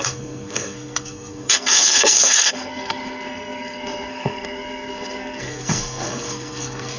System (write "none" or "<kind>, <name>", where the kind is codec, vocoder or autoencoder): codec, SNAC